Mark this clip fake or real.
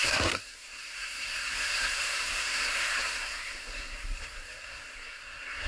fake